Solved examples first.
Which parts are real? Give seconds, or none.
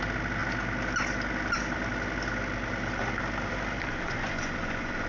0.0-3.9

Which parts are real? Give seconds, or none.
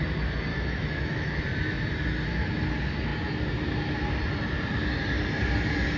0.0-0.5; 1.4-6.0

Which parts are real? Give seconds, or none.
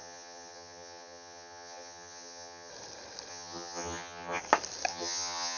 2.7-3.3; 4.4-4.9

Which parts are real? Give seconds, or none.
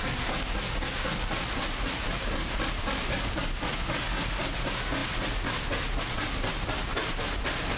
0.0-7.8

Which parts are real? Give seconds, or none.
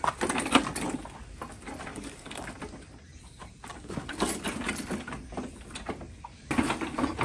0.0-1.9; 2.5-3.7; 4.5-7.2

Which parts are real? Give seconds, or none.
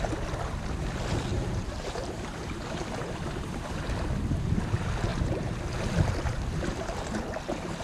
0.0-1.3; 3.2-5.1; 5.6-7.8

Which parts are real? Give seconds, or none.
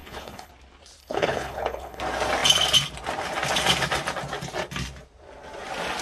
0.5-1.0; 2.0-6.0